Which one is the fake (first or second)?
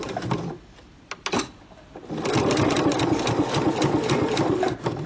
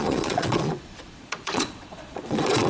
second